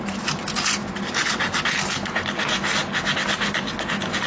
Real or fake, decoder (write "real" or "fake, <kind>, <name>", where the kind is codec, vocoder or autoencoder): real